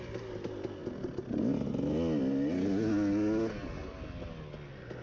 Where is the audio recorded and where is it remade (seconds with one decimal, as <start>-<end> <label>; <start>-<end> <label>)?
0.0-5.0 recorded